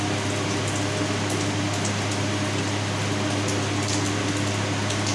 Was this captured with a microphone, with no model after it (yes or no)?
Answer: yes